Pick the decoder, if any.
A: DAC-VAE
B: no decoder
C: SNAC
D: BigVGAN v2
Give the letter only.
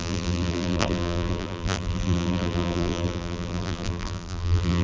D